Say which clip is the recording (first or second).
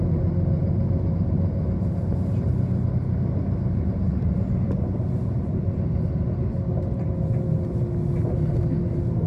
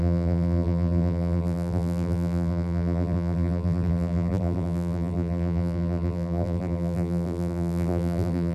first